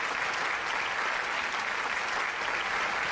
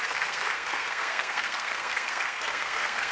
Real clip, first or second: first